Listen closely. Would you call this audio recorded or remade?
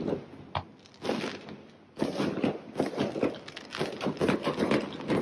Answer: recorded